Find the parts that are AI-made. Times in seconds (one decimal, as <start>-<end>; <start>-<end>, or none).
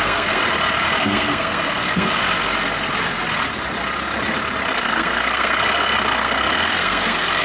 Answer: 0.0-0.4; 1.0-2.2; 4.7-7.4